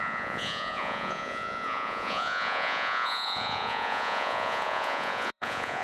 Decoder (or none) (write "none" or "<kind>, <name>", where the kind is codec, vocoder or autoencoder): vocoder, Vocos